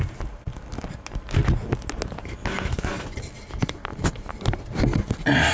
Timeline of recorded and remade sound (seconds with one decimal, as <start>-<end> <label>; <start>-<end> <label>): 0.0-5.5 recorded